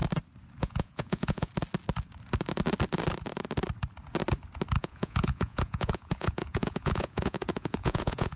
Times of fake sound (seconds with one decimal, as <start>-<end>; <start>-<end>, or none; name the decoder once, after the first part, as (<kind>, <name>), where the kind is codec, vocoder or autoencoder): 0.6-1.5 (vocoder, Vocos); 4.8-8.4